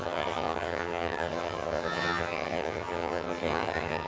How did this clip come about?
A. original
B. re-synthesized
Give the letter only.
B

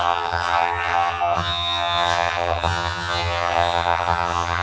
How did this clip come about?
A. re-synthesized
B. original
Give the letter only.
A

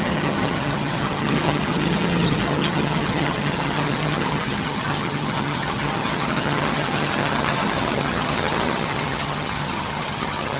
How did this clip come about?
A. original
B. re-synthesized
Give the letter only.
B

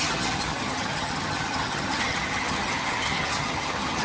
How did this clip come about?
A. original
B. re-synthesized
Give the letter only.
B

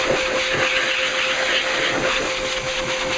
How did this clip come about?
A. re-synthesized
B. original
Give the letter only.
B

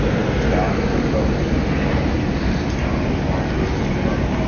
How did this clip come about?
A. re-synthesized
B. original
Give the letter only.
B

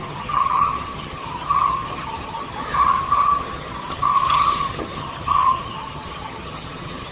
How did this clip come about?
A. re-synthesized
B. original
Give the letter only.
A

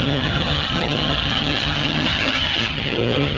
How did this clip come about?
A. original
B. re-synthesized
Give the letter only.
B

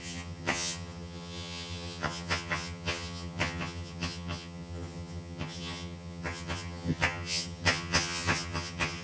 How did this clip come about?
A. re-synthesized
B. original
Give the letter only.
A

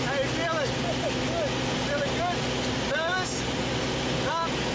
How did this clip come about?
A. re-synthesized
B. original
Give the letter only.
B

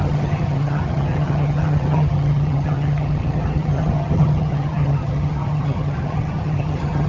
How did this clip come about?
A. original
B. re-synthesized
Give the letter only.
B